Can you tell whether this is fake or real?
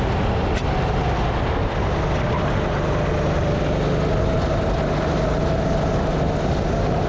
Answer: real